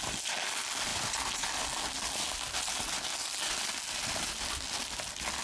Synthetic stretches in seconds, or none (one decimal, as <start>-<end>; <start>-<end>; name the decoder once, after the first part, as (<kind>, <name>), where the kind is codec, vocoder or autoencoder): none

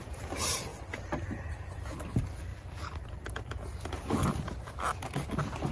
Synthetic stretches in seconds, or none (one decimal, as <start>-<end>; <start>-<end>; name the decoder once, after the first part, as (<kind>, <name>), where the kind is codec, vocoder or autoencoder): 0.0-0.7 (vocoder, BigVGAN v2); 1.7-4.2

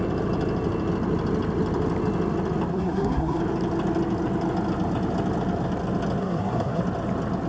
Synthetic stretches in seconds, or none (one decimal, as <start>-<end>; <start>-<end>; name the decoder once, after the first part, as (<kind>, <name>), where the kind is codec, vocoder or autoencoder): 2.7-3.4 (codec, SNAC); 6.2-6.8

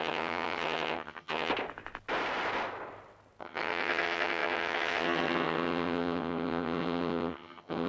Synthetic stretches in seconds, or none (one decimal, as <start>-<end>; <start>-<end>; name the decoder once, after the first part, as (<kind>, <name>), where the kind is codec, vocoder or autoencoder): 0.0-1.5 (vocoder, HiFi-GAN); 3.4-7.9